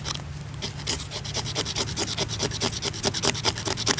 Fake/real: real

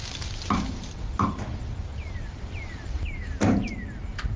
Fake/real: real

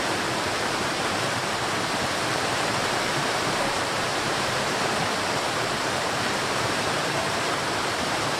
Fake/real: fake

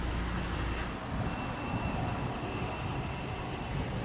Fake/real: real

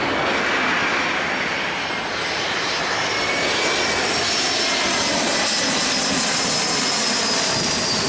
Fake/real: real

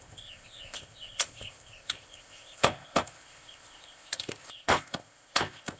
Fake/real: fake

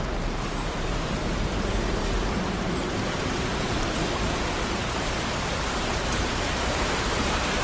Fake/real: fake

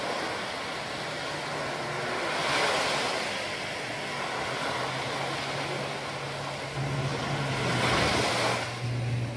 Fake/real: real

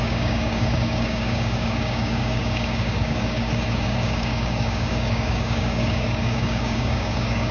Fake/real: fake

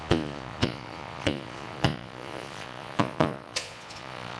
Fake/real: fake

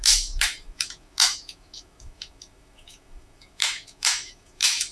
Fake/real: fake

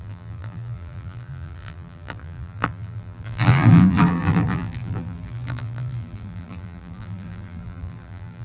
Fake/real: fake